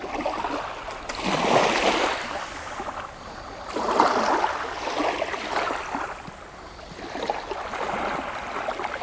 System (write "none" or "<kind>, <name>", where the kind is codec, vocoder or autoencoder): none